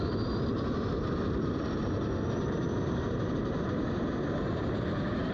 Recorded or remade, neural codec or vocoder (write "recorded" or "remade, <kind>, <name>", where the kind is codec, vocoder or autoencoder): remade, vocoder, BigVGAN v2